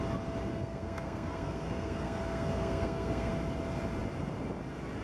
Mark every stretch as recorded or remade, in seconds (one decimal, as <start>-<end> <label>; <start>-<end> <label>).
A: 0.0-0.5 recorded; 0.5-3.3 remade; 3.3-5.0 recorded